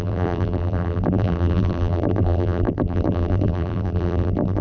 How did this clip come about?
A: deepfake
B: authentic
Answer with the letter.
A